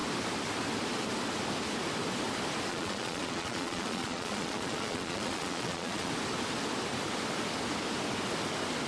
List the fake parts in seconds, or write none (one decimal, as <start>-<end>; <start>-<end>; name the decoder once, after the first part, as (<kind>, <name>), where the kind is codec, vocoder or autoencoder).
2.7-6.1 (vocoder, Vocos)